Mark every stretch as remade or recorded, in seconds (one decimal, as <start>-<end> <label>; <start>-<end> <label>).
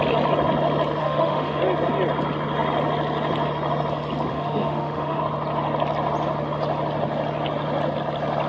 0.0-1.0 recorded; 1.0-1.6 remade; 1.6-4.3 recorded; 4.3-5.2 remade; 5.2-8.5 recorded